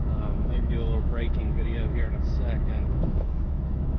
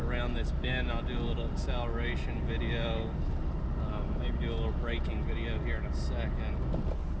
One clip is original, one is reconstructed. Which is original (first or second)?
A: second